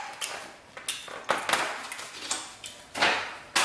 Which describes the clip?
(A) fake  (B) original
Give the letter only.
B